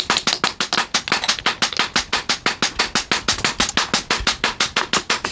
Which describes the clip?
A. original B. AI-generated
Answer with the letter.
A